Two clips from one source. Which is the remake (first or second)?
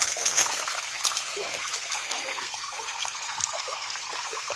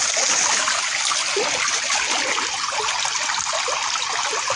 first